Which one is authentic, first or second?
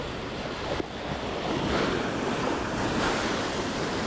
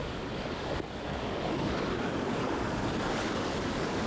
first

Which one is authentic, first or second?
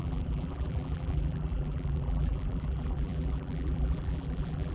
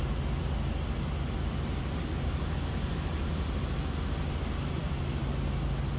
second